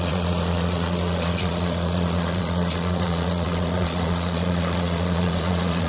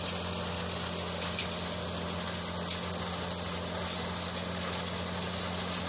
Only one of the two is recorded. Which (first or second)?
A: second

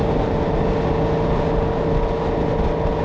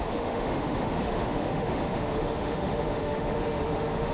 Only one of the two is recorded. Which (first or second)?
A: first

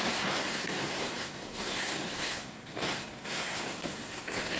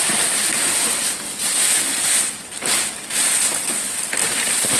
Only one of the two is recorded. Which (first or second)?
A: second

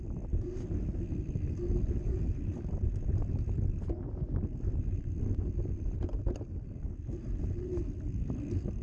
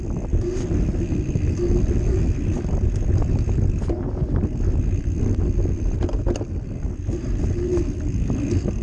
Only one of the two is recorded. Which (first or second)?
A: second